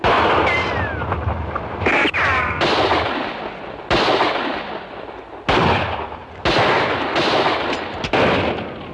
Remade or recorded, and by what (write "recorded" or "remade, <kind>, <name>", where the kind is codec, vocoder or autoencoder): recorded